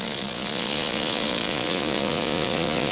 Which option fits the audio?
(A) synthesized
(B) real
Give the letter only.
A